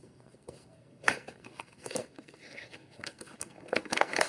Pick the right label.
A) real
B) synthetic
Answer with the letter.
B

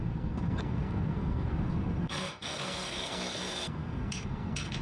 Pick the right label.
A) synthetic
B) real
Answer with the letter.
A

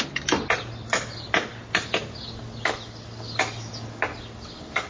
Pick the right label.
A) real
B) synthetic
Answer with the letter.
A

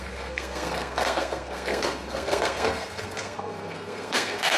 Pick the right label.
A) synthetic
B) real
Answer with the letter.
A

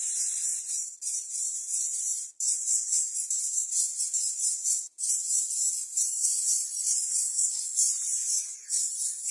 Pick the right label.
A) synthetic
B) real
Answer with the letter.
B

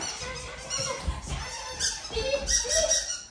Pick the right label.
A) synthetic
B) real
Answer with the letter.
B